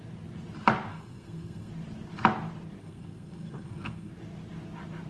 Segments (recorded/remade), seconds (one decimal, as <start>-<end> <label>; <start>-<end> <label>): 0.0-0.9 recorded; 0.9-1.7 remade; 1.7-2.8 recorded; 2.8-4.1 remade; 4.1-5.1 recorded